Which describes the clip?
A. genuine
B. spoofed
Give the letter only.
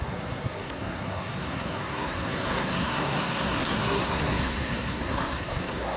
B